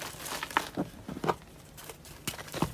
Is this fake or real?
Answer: real